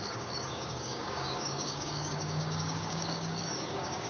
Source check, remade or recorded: remade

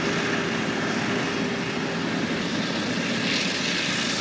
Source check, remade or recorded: recorded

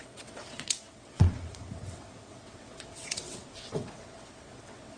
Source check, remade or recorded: remade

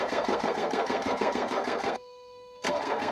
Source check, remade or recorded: remade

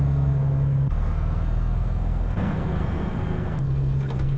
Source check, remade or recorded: remade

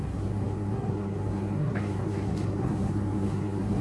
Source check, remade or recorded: remade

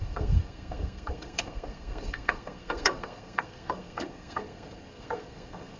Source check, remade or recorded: remade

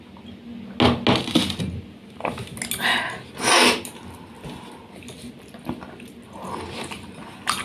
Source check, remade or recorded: recorded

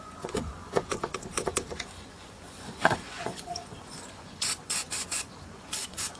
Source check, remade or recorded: remade